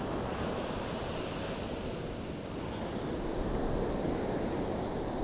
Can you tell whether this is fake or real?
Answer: real